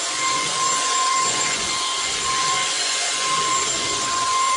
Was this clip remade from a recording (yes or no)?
yes